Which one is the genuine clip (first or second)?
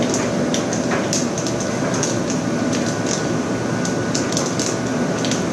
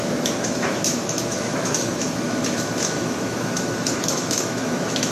first